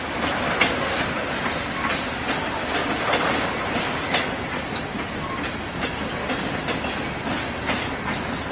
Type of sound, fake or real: real